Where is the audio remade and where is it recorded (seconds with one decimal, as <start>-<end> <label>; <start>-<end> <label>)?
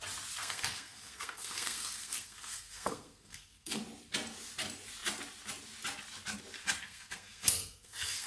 0.0-0.4 recorded; 0.4-3.8 remade; 3.8-6.8 recorded; 6.8-8.3 remade